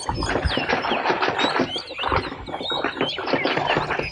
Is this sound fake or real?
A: real